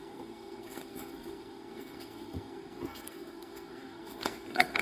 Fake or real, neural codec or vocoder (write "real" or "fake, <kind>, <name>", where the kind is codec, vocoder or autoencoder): fake, codec, SNAC